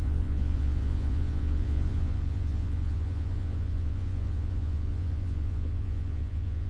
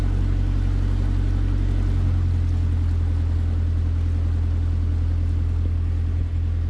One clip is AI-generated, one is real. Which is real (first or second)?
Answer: second